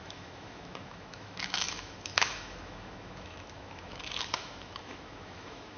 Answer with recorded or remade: remade